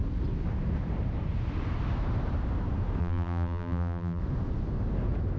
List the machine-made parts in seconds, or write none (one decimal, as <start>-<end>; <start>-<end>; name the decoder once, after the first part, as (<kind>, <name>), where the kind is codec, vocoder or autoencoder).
3.0-4.2 (vocoder, BigVGAN v2)